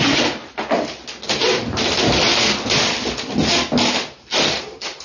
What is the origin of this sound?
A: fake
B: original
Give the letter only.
B